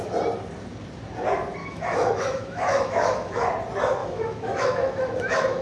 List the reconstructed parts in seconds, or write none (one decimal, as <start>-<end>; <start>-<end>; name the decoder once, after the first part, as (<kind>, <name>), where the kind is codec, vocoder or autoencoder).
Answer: 1.6-3.4 (autoencoder, DAC-VAE); 4.0-5.6